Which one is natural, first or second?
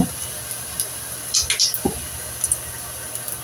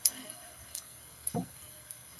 first